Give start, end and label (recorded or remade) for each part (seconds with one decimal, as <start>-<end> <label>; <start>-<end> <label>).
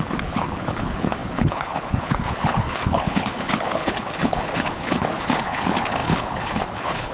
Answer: 0.0-7.1 remade